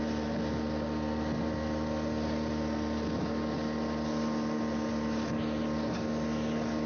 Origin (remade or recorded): recorded